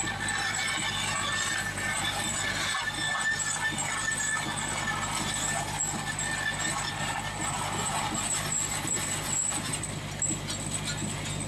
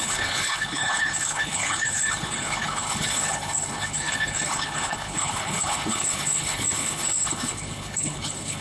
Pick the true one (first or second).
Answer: first